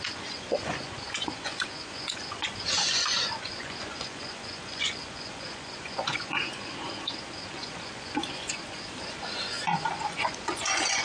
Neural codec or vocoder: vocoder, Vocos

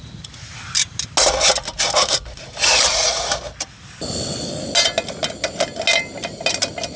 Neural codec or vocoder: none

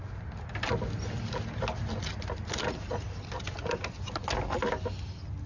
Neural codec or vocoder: none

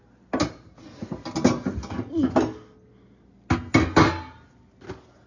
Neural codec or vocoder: none